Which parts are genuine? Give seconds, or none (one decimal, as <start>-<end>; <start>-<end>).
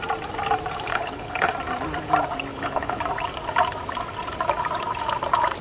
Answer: 0.0-0.9; 1.5-2.5; 3.0-5.6